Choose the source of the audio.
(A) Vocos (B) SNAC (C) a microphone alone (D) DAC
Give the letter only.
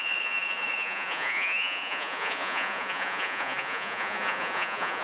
A